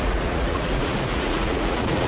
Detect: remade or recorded remade